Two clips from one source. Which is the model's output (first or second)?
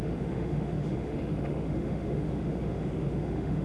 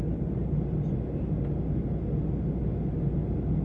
first